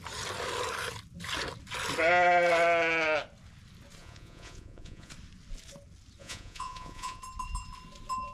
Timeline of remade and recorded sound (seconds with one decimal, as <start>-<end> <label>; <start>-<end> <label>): 0.0-4.0 recorded; 4.0-5.1 remade; 5.1-6.2 recorded; 6.2-7.2 remade; 7.2-8.3 recorded